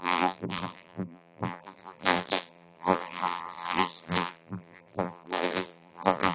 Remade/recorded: remade